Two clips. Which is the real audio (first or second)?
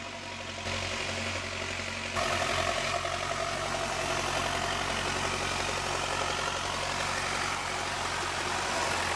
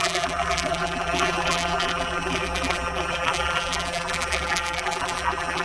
first